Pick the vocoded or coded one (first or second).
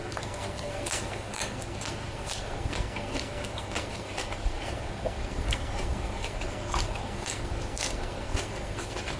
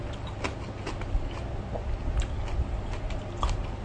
first